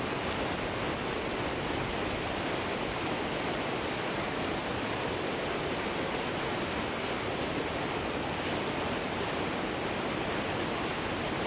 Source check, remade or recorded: recorded